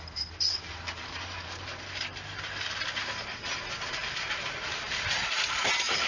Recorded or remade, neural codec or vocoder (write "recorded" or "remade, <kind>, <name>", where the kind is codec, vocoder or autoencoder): remade, vocoder, BigVGAN v2